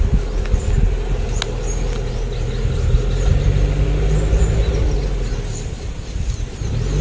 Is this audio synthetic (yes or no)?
no